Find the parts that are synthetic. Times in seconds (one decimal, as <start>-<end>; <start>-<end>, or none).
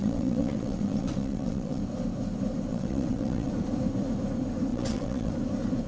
0.0-1.8; 2.7-3.5; 4.7-5.3